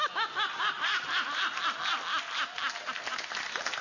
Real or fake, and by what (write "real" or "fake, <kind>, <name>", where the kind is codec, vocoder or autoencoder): real